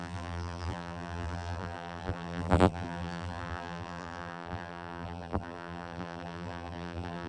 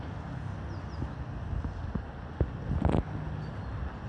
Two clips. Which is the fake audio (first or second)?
first